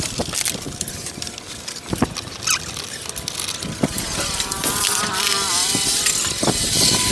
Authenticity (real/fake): real